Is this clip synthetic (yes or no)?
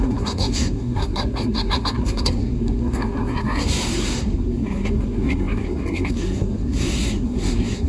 yes